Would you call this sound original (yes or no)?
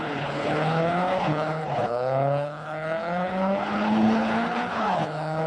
no